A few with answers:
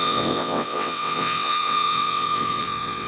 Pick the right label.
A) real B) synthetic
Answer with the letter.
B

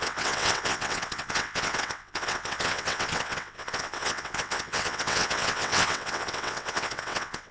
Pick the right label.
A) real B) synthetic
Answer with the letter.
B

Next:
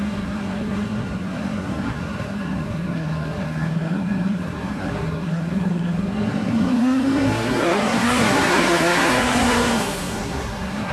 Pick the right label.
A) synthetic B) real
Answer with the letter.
A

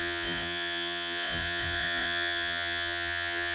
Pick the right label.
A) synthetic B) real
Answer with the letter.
A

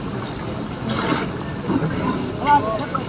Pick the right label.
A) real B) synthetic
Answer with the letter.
A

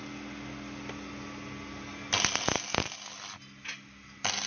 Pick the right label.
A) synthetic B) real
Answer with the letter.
B